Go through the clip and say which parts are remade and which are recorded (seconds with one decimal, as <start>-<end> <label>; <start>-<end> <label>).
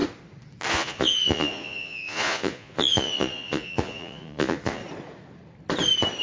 0.0-0.7 recorded; 0.7-4.8 remade; 4.8-6.2 recorded